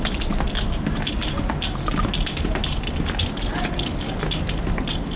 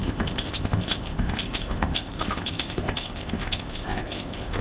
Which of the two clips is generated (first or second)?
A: second